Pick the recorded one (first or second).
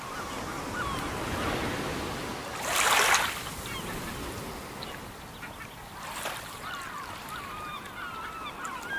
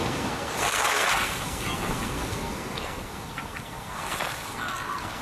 first